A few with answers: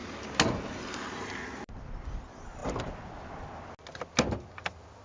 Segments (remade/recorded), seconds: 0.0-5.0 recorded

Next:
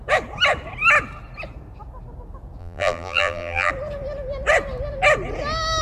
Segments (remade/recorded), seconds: 0.0-2.6 recorded; 2.6-3.7 remade; 3.7-5.8 recorded

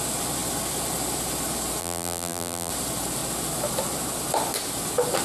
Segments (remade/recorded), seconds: 0.0-1.8 recorded; 1.8-2.7 remade; 2.7-5.2 recorded

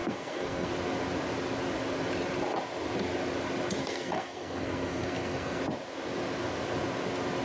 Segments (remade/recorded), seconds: 0.0-0.7 remade; 0.7-3.8 recorded; 3.8-5.6 remade; 5.6-7.4 recorded